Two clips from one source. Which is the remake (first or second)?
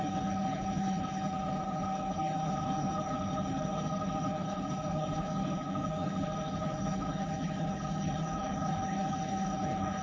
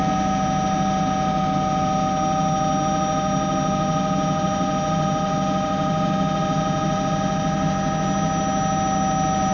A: first